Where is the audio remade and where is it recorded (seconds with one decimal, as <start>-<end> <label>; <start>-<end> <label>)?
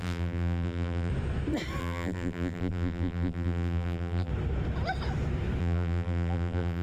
0.0-1.1 remade; 1.1-1.8 recorded; 1.8-4.3 remade; 4.3-5.6 recorded; 5.6-6.8 remade